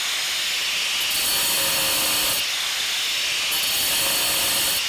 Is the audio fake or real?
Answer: real